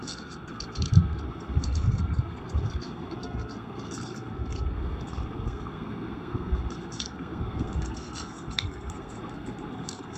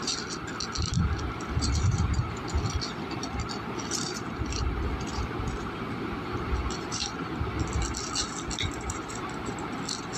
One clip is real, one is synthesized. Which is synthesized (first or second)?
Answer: first